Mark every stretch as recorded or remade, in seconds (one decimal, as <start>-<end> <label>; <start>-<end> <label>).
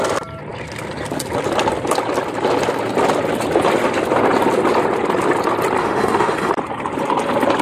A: 0.0-5.8 recorded; 5.8-6.5 remade; 6.5-7.6 recorded